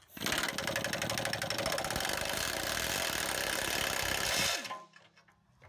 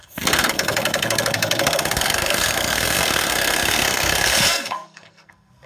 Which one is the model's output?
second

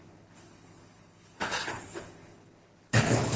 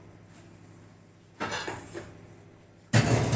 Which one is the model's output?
first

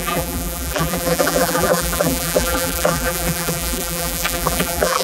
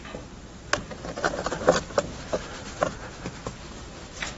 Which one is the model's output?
first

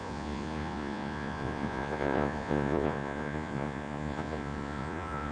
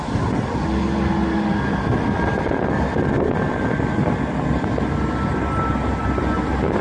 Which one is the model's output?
first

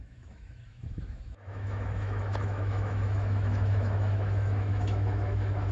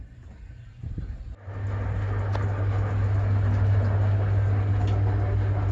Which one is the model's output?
first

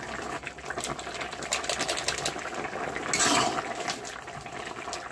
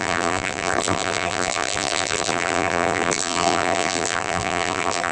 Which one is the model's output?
second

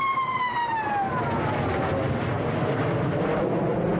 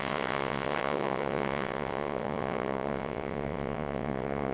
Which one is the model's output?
second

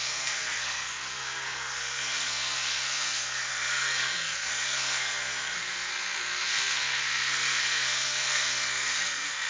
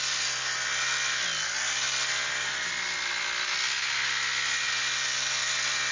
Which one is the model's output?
first